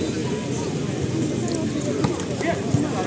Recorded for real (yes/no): yes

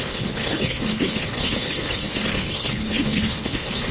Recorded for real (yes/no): no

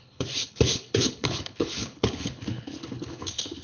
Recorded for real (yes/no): no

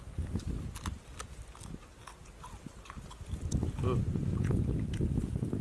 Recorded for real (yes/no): yes